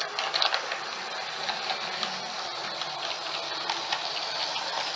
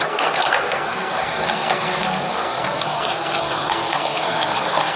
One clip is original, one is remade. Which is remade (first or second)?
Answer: second